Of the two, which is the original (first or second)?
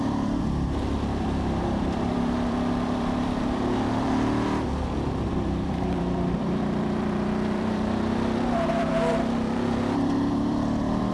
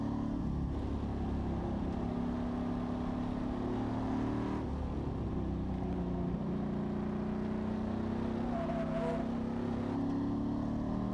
second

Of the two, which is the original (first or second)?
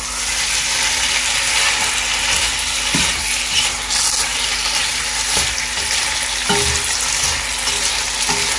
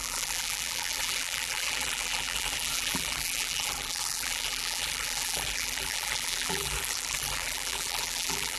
first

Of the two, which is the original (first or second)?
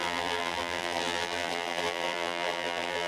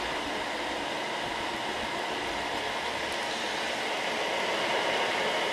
second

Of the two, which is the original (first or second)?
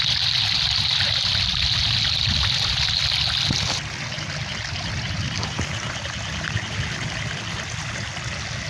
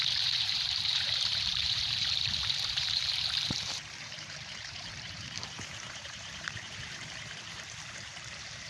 first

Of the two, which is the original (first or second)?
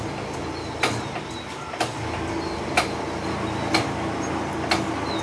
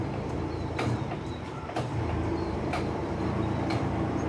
first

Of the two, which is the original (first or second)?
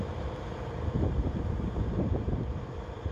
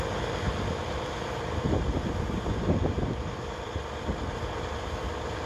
second